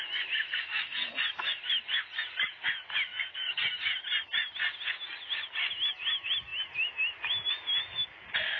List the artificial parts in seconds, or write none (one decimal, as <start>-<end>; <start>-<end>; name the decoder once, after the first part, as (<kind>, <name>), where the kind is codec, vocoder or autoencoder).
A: none